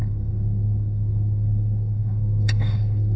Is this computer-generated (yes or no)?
yes